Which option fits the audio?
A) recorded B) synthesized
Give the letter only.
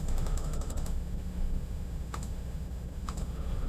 B